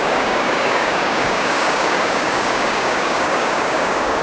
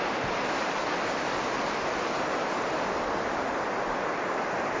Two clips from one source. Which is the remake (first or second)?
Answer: first